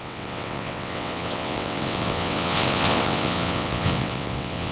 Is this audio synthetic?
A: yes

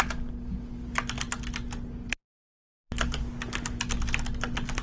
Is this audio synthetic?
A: no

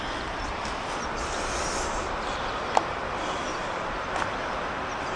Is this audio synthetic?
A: no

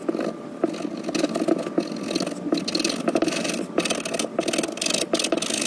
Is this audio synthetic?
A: no